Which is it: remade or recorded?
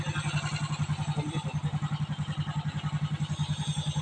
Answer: recorded